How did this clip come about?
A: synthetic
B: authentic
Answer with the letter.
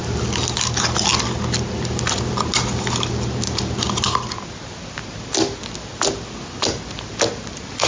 B